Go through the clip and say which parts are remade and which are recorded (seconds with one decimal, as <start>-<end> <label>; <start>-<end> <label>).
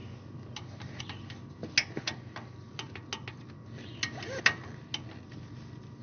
0.0-6.0 recorded